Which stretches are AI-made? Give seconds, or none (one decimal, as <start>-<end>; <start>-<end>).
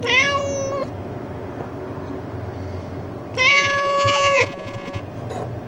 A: 3.5-5.0